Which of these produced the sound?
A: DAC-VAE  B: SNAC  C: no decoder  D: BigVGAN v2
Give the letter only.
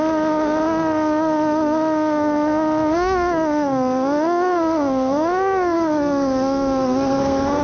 B